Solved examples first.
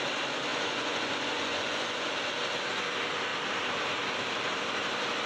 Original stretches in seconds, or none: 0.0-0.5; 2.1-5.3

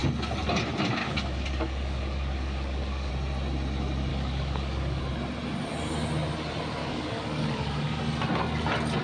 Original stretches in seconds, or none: 0.0-1.0; 3.1-4.1; 5.0-6.8; 8.0-9.0

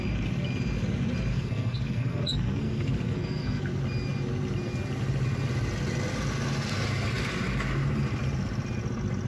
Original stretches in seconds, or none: 0.0-1.3; 3.6-9.3